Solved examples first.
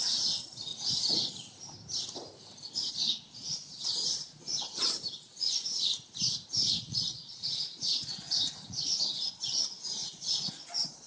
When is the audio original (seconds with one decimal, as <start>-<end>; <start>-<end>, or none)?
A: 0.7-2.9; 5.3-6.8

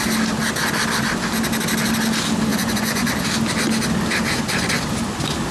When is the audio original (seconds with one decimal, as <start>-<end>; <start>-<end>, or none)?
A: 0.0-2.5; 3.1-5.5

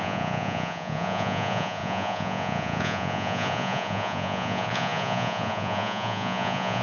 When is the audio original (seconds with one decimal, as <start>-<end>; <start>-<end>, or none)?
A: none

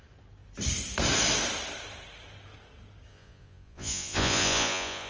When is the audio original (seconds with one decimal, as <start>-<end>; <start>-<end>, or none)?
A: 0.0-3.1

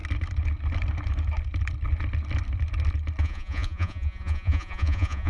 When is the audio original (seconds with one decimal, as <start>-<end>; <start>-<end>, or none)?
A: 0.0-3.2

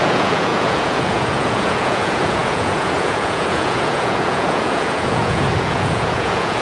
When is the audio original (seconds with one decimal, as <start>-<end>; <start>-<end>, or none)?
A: none

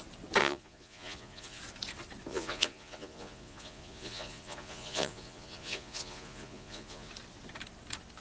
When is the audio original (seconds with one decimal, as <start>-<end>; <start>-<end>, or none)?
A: 0.0-0.4; 1.6-2.3; 7.1-8.2

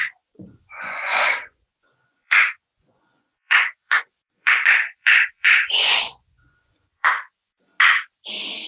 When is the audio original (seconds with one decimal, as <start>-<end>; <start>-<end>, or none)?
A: 7.7-8.7